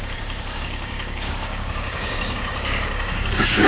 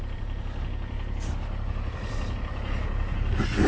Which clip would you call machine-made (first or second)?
first